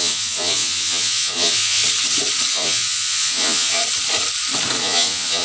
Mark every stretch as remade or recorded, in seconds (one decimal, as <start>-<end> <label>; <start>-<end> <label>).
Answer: 0.0-1.8 remade; 1.8-2.5 recorded; 2.5-3.8 remade; 3.8-4.8 recorded; 4.8-5.4 remade